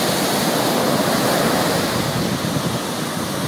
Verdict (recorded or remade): recorded